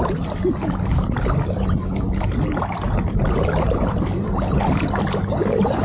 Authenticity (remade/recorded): remade